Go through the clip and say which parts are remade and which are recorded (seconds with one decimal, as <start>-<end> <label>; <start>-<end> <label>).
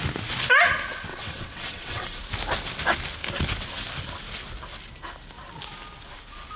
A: 0.0-1.1 recorded; 1.1-2.2 remade; 2.2-6.6 recorded